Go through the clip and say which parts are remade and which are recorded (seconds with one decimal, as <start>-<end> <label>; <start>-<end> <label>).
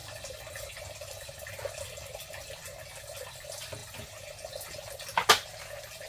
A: 0.0-3.8 recorded; 3.8-4.5 remade; 4.5-6.1 recorded